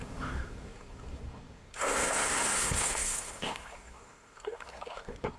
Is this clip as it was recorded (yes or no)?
no